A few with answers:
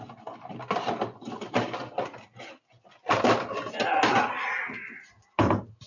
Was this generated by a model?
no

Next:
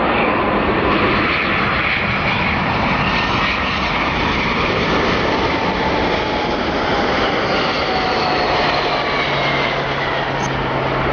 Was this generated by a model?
no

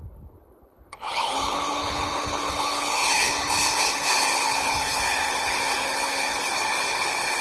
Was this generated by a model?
yes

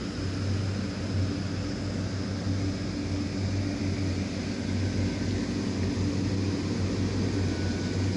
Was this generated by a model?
no